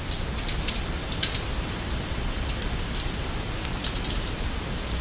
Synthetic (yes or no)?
no